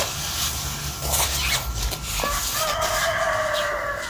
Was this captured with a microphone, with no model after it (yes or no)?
yes